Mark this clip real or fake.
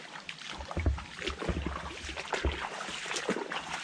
real